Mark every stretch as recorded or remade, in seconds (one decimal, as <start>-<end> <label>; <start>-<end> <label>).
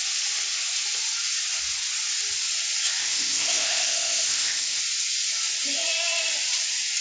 0.0-3.0 recorded; 3.0-4.8 remade; 4.8-7.0 recorded